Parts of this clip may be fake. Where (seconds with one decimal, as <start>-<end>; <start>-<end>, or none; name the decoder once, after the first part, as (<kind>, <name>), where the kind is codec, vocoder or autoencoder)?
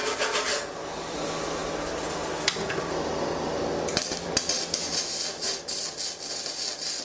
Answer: none